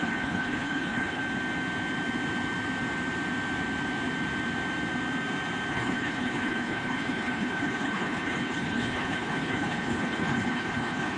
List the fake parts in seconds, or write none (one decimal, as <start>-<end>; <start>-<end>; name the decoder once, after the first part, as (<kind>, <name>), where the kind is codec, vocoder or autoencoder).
0.0-1.2 (codec, HILCodec); 5.7-11.2

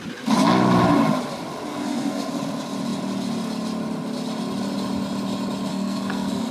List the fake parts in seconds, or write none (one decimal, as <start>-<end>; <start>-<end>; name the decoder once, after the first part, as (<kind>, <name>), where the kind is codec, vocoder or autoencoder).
1.7-2.3 (codec, SNAC); 5.7-6.5

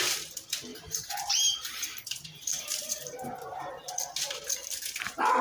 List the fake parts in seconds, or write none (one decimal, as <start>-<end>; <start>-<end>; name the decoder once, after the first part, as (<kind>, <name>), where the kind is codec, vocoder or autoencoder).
0.7-3.7 (vocoder, BigVGAN v2)

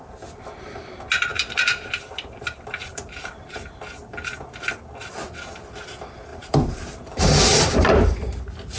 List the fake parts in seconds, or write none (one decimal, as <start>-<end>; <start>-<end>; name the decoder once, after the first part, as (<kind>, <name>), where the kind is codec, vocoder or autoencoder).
1.3-3.6 (vocoder, BigVGAN v2); 6.3-8.4

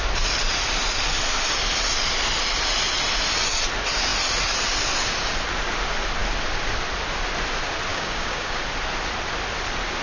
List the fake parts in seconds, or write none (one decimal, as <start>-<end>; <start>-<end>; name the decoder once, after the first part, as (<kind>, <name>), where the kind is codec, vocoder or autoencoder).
7.9-8.6 (codec, DAC)